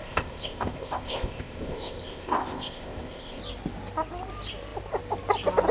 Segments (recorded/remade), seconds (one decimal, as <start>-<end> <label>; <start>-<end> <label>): 0.0-3.4 remade; 3.4-5.7 recorded